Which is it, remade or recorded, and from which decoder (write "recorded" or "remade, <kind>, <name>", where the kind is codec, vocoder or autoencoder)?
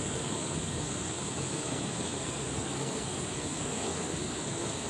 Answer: remade, codec, SNAC